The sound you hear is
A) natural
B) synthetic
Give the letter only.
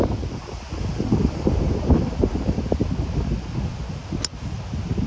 A